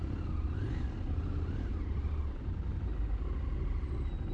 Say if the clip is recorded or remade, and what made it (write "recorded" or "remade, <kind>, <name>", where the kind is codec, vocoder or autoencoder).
recorded